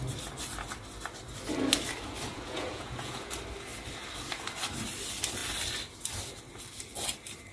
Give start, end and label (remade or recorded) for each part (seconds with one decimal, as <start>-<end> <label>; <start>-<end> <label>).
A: 0.0-2.3 recorded; 2.3-3.3 remade; 3.3-7.5 recorded